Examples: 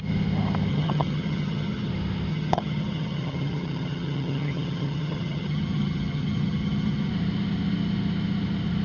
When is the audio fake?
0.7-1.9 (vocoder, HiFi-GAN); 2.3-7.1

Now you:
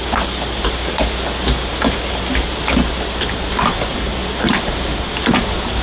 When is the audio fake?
none

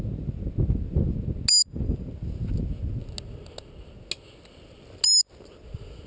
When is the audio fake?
none

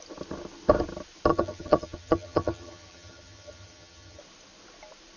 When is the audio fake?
1.3-4.2 (vocoder, HiFi-GAN)

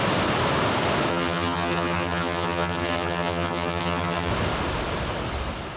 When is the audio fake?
1.1-4.3 (vocoder, HiFi-GAN)